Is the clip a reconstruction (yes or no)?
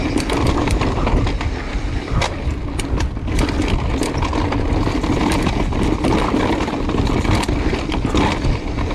no